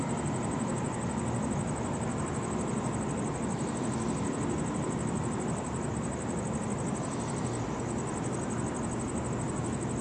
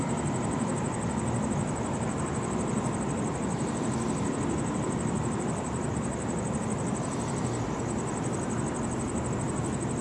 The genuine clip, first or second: first